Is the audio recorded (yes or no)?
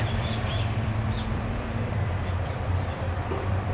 no